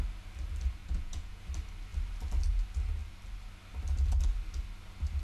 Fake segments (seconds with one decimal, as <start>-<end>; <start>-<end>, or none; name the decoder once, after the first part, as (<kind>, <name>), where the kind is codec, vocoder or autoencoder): 0.8-1.4 (vocoder, Vocos)